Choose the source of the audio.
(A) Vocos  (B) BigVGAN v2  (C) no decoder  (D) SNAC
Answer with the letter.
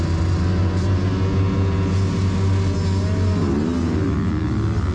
C